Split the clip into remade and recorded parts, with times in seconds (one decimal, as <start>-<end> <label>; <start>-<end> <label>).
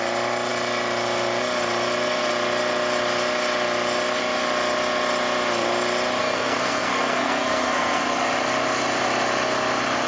0.0-6.2 recorded; 6.2-8.0 remade; 8.0-10.1 recorded